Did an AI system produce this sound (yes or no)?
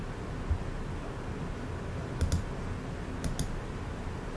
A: no